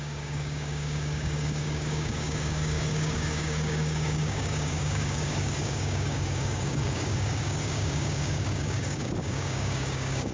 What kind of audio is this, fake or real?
fake